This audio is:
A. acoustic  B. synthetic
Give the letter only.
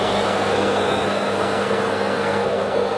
B